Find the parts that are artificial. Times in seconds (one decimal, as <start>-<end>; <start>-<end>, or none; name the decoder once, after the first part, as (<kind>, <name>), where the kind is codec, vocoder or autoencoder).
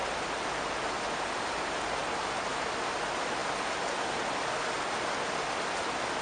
none